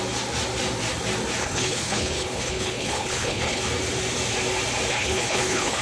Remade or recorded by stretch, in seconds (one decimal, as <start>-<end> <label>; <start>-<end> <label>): 0.0-1.4 recorded; 1.4-3.6 remade; 3.6-4.9 recorded; 4.9-5.8 remade